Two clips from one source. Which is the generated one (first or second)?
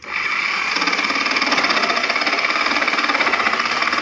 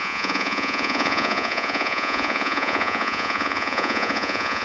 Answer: second